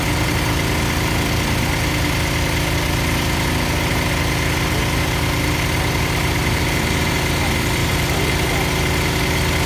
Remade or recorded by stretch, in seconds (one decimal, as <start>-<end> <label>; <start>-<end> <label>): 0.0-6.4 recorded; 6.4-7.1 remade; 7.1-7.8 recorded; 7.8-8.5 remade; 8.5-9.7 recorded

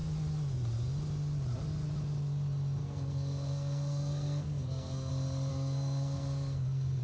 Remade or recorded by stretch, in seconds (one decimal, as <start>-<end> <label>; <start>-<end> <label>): 0.0-2.8 recorded; 2.8-5.1 remade; 5.1-5.5 recorded; 5.5-7.0 remade

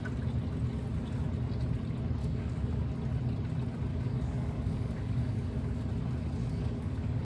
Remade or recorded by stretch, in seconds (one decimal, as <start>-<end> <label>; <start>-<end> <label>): 0.0-2.2 recorded; 2.2-2.9 remade; 2.9-3.9 recorded; 3.9-5.9 remade; 5.9-6.4 recorded; 6.4-7.2 remade